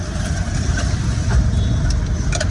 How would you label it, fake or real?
fake